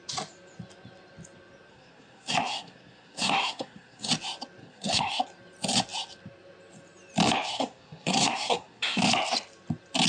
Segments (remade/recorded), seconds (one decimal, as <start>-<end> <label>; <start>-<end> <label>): 0.0-1.7 recorded; 1.7-4.1 remade; 4.1-4.6 recorded; 4.6-5.2 remade; 5.2-7.5 recorded; 7.5-9.0 remade; 9.0-10.1 recorded